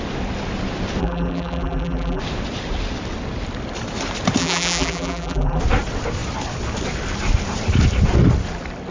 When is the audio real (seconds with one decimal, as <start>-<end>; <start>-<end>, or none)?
0.0-1.0; 2.2-4.4; 5.6-8.9